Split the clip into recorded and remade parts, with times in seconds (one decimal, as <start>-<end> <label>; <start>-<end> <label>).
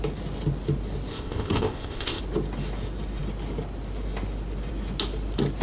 0.0-1.1 recorded; 1.1-2.2 remade; 2.2-5.6 recorded